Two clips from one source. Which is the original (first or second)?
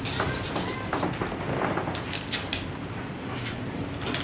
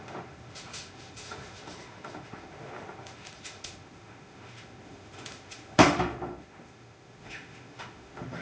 first